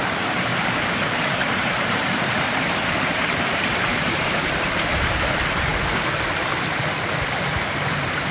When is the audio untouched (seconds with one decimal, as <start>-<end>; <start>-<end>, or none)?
0.0-0.5; 5.3-8.3